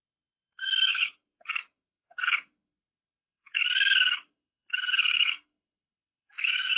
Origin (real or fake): fake